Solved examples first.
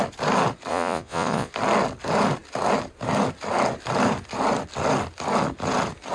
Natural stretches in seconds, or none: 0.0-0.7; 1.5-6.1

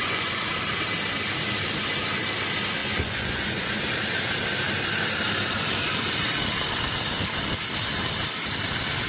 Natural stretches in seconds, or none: 0.5-2.8; 3.8-9.1